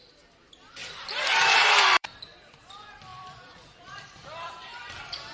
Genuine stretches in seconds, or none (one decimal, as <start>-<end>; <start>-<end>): 0.0-0.8; 2.3-3.1